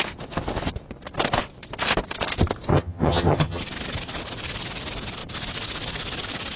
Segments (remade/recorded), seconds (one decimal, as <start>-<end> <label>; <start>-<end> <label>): 0.0-2.7 recorded; 2.7-3.6 remade; 3.6-6.6 recorded